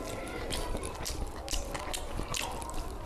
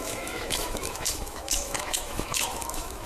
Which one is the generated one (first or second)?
second